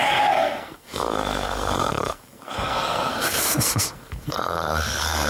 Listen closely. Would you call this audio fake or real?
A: fake